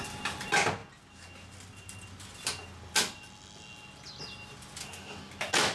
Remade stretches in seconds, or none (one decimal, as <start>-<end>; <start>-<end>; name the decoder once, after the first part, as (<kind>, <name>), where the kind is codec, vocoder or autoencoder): 4.8-5.3 (codec, DAC)